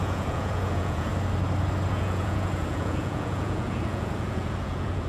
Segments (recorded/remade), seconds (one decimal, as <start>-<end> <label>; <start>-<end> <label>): 0.0-1.1 remade; 1.1-1.9 recorded; 1.9-5.1 remade